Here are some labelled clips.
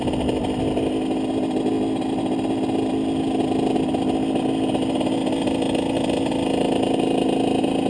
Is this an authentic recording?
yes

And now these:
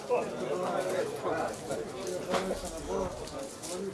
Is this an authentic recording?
yes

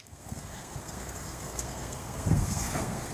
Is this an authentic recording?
no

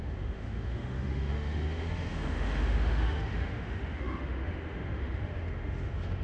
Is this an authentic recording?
no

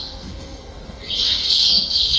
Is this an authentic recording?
no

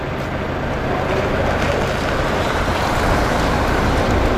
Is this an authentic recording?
yes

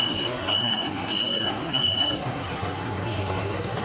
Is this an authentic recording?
no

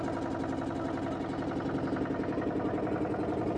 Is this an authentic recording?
yes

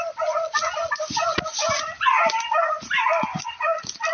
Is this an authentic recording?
yes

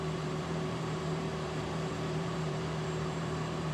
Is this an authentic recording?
no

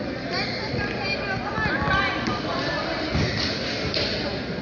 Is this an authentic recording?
yes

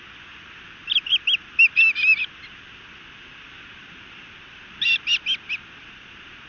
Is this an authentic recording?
yes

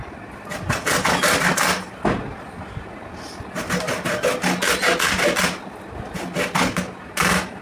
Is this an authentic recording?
yes